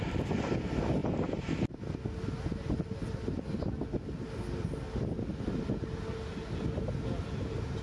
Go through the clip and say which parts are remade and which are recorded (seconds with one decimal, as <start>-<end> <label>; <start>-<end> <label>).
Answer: 0.0-7.8 recorded